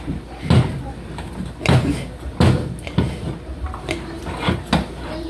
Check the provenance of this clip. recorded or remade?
recorded